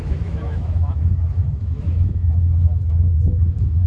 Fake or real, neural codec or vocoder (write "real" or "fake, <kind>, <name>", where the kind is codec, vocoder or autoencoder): fake, autoencoder, DAC-VAE